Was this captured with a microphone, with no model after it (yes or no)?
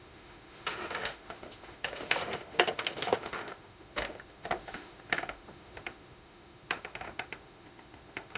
no